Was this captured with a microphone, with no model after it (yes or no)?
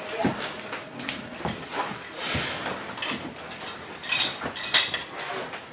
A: no